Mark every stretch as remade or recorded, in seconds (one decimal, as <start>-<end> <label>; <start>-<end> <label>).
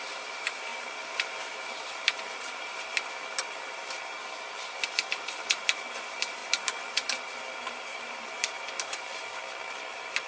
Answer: 0.0-9.4 remade; 9.4-9.9 recorded; 9.9-10.3 remade